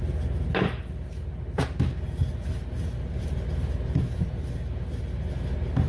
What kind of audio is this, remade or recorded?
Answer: recorded